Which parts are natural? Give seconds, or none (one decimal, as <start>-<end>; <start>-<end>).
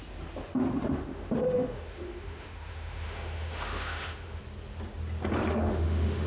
0.0-1.1; 4.4-5.5